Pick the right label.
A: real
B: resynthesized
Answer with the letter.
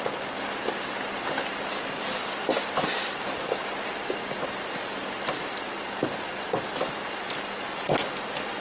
A